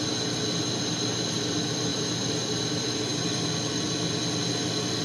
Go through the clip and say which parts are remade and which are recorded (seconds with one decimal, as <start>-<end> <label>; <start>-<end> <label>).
0.0-5.0 recorded